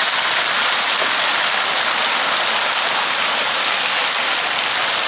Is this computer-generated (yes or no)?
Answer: no